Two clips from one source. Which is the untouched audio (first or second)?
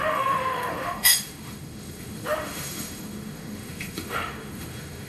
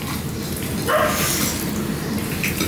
second